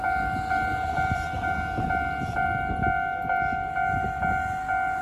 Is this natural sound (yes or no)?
yes